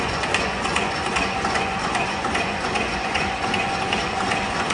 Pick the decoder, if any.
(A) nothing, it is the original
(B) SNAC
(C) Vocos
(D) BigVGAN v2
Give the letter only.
C